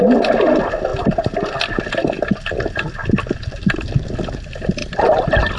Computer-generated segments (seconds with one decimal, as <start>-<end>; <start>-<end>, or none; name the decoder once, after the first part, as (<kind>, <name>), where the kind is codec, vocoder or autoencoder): 4.8-5.6 (vocoder, BigVGAN v2)

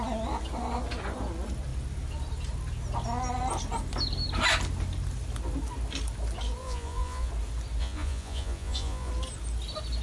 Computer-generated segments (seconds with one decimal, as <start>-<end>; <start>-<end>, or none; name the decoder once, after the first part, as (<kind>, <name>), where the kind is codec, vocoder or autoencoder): 6.6-7.3 (vocoder, Vocos); 7.8-9.1

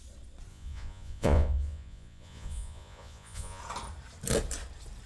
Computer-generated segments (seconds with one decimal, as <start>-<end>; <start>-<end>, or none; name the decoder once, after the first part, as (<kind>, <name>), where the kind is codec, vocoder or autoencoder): 0.5-3.6 (vocoder, Vocos)

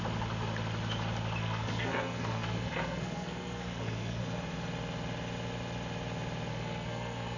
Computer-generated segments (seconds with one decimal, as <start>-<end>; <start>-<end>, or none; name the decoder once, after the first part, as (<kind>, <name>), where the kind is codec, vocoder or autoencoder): 1.4-4.2 (codec, SNAC); 6.5-7.4